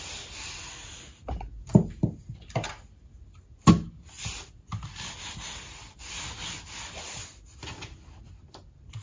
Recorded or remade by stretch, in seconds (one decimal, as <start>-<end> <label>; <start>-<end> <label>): 0.0-9.0 recorded